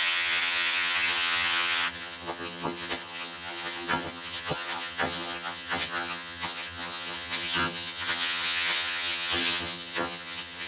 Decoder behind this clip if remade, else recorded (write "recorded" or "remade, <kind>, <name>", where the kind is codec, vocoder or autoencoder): remade, vocoder, HiFi-GAN